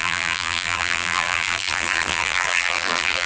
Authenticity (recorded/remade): remade